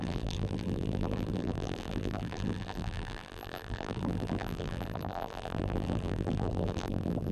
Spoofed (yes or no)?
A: yes